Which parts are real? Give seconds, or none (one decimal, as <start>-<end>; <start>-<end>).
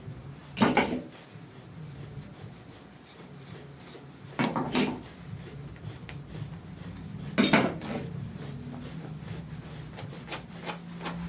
0.0-11.3